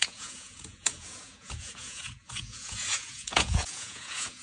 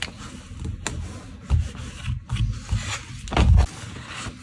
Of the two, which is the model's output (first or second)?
first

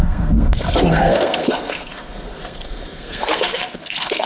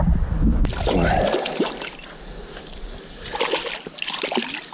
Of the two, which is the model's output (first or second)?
first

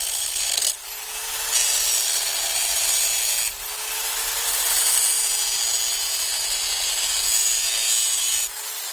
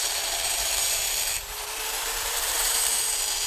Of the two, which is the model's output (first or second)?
second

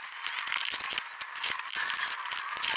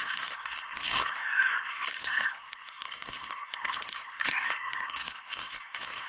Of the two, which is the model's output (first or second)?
second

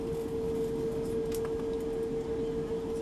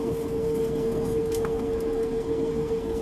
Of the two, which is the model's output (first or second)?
second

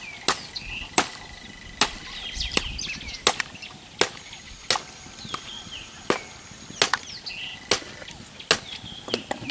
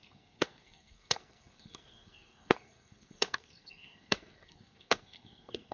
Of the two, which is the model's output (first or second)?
second